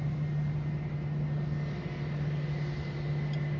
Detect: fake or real real